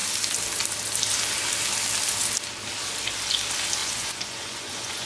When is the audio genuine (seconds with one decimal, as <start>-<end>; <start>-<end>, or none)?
0.0-3.8